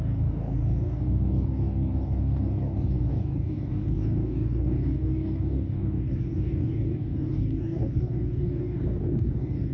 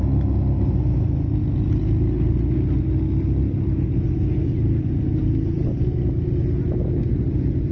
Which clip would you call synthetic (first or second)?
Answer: first